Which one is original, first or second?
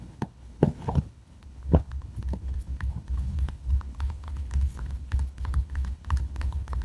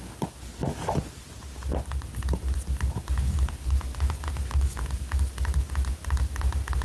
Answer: second